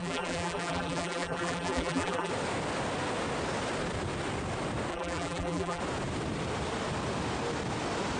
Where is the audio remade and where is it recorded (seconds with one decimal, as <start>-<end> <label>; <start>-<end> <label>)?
0.0-2.3 remade; 2.3-4.9 recorded; 4.9-5.8 remade; 5.8-8.2 recorded